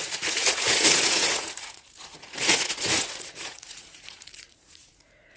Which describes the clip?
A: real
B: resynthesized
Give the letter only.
B